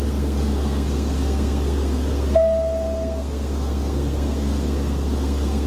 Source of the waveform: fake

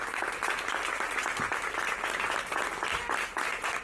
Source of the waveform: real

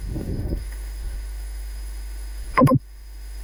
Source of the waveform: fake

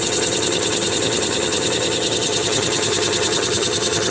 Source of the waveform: fake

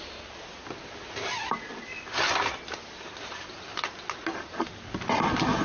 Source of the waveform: real